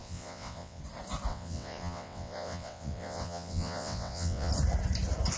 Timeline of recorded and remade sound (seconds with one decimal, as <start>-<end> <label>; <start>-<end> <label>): 0.0-0.8 remade; 0.8-1.3 recorded; 1.3-4.5 remade; 4.5-5.4 recorded